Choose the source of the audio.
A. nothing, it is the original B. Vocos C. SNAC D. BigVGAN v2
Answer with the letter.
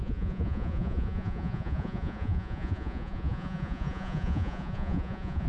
B